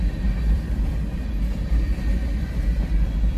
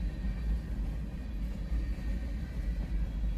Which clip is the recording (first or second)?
second